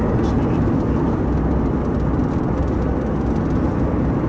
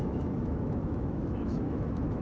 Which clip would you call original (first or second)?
first